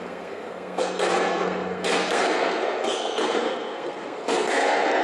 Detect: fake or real fake